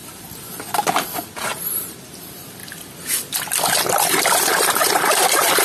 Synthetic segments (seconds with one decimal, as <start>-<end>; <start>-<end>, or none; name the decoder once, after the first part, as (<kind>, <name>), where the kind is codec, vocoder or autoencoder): 1.9-2.6 (vocoder, BigVGAN v2); 4.1-5.6